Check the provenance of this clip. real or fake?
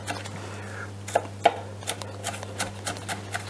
real